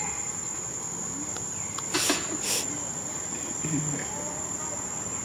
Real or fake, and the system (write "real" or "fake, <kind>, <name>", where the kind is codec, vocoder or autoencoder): real